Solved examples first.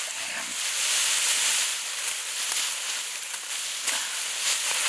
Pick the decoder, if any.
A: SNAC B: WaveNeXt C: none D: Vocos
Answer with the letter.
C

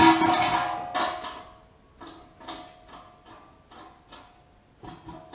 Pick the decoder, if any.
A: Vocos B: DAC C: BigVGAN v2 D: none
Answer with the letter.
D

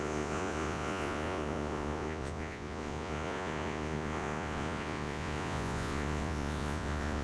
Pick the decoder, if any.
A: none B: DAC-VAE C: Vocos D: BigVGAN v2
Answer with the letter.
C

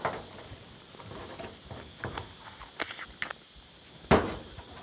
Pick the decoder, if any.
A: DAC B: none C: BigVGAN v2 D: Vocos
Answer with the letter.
B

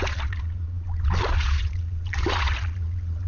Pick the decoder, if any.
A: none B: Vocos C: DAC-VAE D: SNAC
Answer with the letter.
B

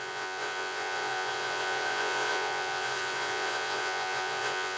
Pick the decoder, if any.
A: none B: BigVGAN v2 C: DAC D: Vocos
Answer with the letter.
D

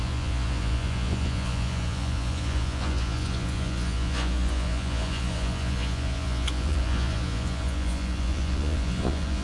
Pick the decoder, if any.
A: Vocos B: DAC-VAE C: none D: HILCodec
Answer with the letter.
A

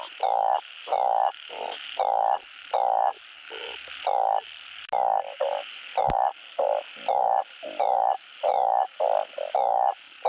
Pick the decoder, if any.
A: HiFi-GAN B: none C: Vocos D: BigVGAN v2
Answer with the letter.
B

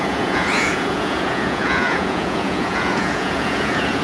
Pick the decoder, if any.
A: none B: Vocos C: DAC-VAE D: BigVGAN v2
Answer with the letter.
B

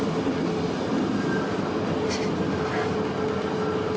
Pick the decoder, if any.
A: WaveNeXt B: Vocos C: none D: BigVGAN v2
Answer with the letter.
C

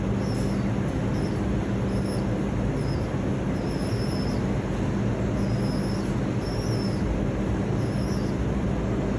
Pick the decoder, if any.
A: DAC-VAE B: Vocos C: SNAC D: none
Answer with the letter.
D